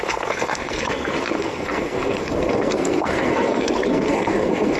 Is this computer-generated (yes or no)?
yes